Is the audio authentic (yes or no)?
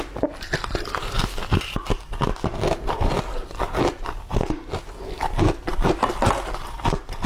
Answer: yes